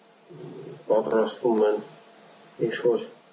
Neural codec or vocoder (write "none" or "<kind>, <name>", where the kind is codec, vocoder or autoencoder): none